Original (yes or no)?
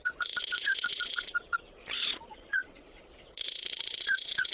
no